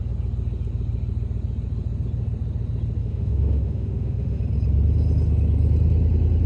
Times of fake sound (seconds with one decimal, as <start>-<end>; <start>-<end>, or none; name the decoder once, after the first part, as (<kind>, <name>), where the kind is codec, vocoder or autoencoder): 3.0-4.4 (autoencoder, DAC-VAE)